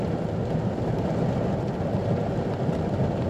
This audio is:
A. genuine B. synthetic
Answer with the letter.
A